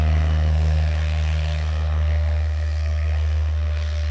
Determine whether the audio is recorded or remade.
remade